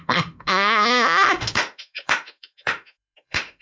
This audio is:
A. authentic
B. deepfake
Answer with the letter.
B